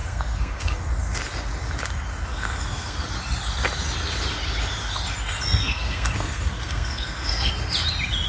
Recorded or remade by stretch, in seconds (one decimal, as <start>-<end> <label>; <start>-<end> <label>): 0.0-0.9 remade; 0.9-2.3 recorded; 2.3-3.1 remade; 3.1-5.6 recorded; 5.6-7.5 remade; 7.5-8.3 recorded